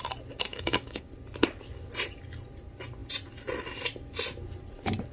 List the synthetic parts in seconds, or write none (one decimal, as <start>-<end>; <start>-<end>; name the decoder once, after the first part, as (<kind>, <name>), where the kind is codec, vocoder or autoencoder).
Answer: 0.5-1.1 (codec, DAC)